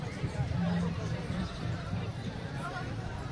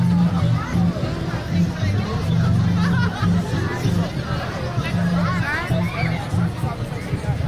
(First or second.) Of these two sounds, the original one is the second